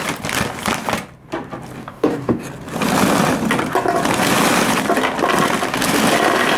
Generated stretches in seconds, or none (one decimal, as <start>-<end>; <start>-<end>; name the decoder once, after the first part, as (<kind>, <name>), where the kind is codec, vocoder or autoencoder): 1.8-2.5 (codec, DAC)